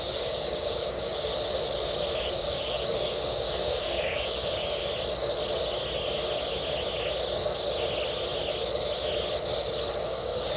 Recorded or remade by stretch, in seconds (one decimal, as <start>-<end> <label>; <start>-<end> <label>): 0.0-1.3 remade; 1.3-2.2 recorded; 2.2-4.9 remade; 4.9-10.0 recorded; 10.0-10.6 remade